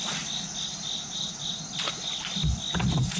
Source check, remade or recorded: recorded